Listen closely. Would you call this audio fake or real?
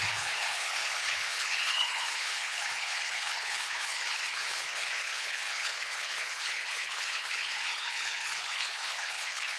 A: fake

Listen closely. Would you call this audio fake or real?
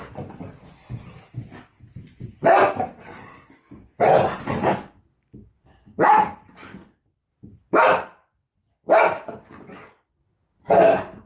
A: real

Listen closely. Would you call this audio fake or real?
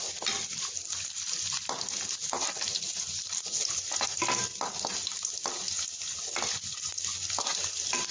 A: real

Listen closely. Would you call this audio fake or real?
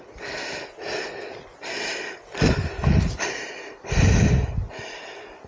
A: real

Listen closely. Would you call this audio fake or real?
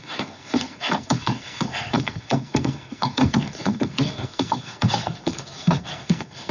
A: fake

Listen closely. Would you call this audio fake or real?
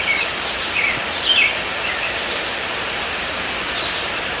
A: fake